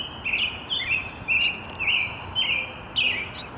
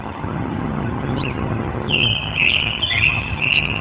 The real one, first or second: first